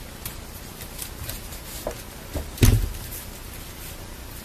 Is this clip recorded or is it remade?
recorded